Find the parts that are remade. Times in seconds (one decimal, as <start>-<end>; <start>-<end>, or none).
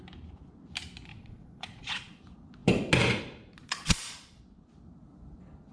1.1-2.2; 3.6-4.4